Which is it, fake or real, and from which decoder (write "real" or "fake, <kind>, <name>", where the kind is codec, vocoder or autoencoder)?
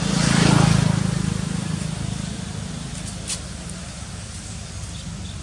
real